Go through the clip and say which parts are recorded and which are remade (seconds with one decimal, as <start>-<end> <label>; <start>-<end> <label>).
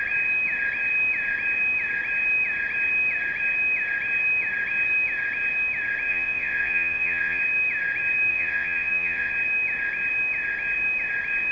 0.0-6.1 recorded; 6.1-7.4 remade; 7.4-8.3 recorded; 8.3-9.3 remade; 9.3-11.5 recorded